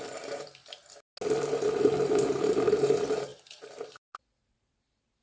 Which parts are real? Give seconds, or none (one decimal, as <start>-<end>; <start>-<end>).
0.6-1.8